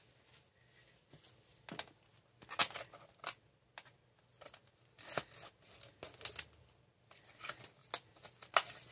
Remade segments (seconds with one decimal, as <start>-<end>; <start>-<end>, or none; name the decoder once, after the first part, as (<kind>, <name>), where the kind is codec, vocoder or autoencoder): none